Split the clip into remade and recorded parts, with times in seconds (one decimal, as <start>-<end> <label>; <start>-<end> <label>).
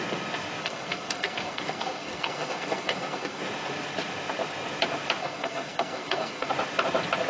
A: 0.0-0.6 recorded; 0.6-3.4 remade; 3.4-5.2 recorded; 5.2-6.5 remade; 6.5-7.3 recorded